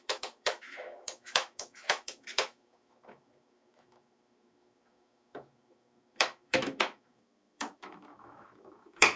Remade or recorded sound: remade